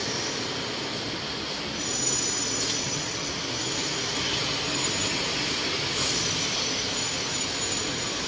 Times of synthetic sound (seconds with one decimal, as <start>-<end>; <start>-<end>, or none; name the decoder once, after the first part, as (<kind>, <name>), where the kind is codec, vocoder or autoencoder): 2.8-3.3 (vocoder, WaveNeXt)